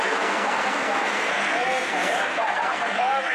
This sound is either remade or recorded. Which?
remade